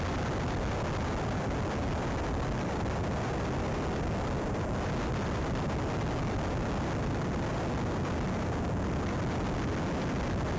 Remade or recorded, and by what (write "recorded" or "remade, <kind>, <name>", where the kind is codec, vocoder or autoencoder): recorded